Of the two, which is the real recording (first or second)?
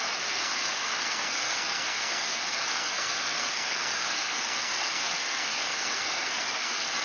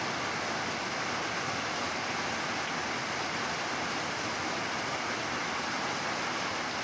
second